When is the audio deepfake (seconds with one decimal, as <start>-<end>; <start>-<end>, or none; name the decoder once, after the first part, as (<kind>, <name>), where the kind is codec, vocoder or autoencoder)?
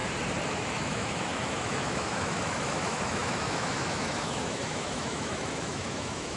0.5-6.4 (autoencoder, DAC-VAE)